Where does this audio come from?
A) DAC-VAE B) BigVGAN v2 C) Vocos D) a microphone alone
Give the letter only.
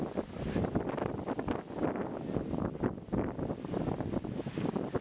D